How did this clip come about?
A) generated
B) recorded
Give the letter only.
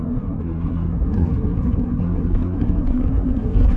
A